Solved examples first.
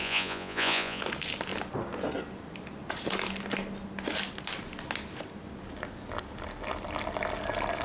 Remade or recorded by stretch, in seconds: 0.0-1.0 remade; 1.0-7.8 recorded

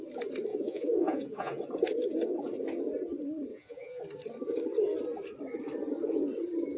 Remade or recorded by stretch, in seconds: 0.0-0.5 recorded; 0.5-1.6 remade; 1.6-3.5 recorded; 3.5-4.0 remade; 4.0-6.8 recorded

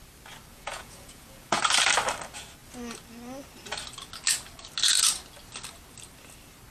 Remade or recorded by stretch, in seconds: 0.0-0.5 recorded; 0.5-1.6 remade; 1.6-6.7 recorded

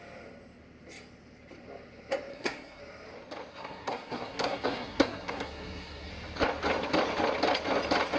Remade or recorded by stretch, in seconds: 0.0-2.3 recorded; 2.3-2.8 remade; 2.8-3.5 recorded; 3.5-6.1 remade; 6.1-8.2 recorded

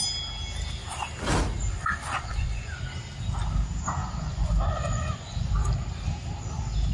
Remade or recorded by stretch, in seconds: 0.0-2.3 recorded; 2.3-2.8 remade; 2.8-4.0 recorded; 4.0-5.5 remade; 5.5-6.9 recorded